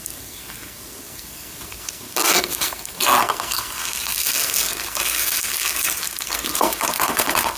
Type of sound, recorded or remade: remade